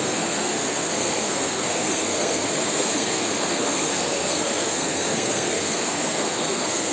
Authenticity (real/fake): fake